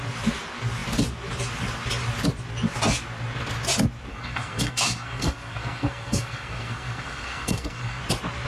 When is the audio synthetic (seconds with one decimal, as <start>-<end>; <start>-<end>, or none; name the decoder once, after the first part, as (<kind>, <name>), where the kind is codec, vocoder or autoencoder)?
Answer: 4.1-8.0 (codec, SNAC)